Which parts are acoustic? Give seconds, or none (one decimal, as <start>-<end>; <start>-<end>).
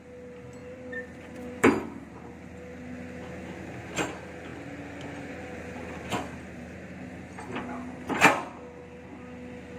0.0-0.6; 2.1-9.8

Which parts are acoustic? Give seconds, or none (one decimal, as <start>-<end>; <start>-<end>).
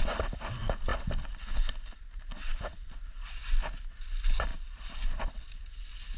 0.0-4.5; 5.5-6.2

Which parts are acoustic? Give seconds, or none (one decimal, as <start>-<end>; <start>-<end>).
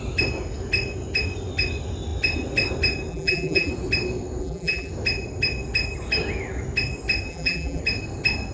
0.0-3.1; 3.7-4.4; 4.9-7.3; 7.8-8.5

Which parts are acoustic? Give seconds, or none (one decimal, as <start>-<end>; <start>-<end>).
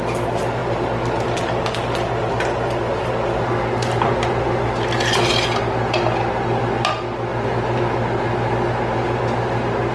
0.0-9.9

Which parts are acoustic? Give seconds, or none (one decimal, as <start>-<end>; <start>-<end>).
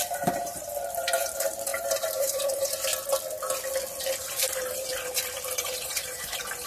2.9-4.0; 4.9-5.6